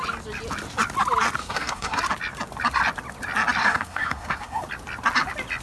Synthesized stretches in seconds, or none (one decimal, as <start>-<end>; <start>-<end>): 1.4-2.0; 3.6-4.6